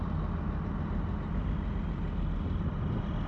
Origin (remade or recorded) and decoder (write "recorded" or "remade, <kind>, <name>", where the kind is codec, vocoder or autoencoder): recorded